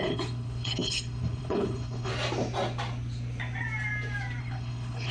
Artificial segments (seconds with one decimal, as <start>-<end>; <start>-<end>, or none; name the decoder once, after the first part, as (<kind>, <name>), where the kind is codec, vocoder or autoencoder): 0.0-2.1 (codec, HILCodec); 4.4-5.1